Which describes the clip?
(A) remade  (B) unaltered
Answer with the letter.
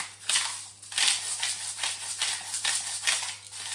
B